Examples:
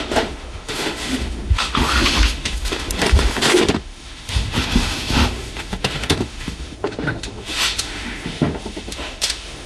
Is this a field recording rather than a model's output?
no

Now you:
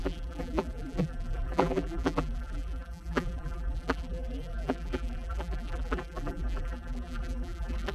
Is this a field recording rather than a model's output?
no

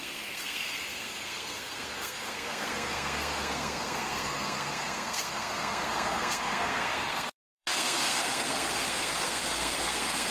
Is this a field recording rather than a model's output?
no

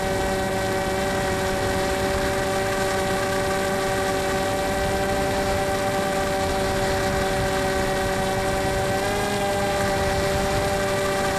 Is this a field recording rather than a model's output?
yes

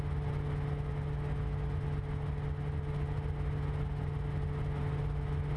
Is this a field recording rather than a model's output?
yes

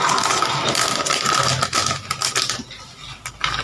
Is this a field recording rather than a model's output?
yes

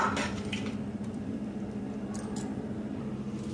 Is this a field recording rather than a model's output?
no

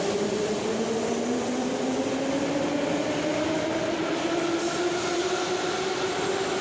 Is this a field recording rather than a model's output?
yes